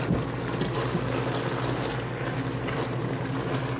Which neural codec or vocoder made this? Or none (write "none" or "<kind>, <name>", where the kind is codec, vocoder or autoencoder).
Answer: none